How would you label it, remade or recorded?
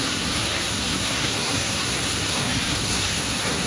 remade